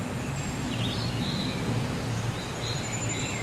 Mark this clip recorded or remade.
recorded